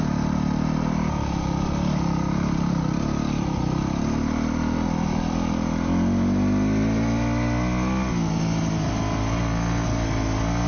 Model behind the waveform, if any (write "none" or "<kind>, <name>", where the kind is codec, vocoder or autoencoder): none